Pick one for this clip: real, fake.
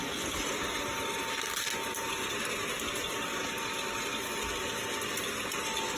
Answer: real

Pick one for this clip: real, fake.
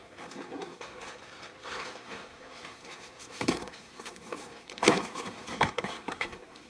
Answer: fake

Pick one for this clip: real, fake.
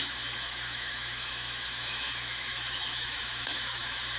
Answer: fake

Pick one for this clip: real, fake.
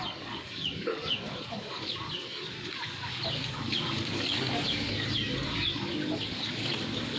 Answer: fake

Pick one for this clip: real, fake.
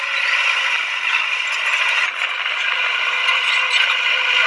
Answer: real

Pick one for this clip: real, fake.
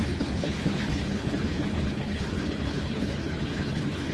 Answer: fake